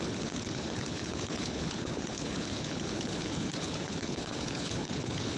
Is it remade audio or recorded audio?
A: remade